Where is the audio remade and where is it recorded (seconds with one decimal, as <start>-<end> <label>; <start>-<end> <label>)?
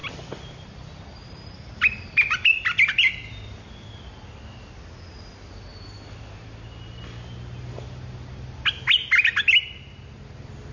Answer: 0.0-4.4 remade; 4.4-5.7 recorded; 5.7-8.6 remade; 8.6-10.7 recorded